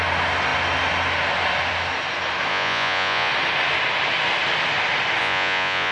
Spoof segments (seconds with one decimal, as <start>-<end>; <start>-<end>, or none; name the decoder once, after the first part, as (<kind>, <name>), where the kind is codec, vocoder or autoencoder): 2.5-3.3 (vocoder, Vocos); 5.2-5.9